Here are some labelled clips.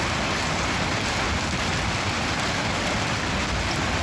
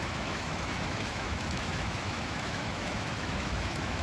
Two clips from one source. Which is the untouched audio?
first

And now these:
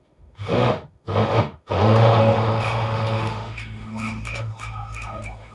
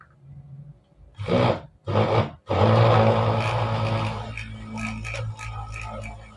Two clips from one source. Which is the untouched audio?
second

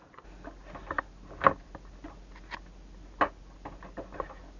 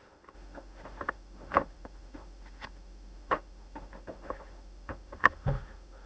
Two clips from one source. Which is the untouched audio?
first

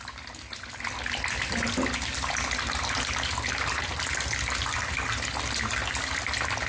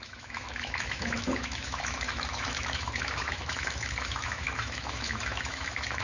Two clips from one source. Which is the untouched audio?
first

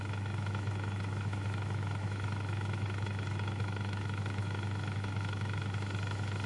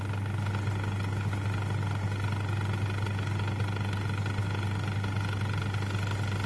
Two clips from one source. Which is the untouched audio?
second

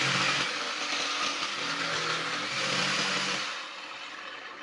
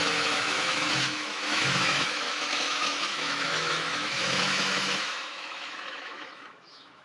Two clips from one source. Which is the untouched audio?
first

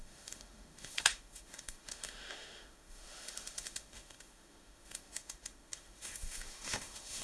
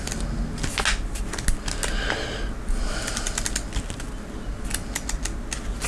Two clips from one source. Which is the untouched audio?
second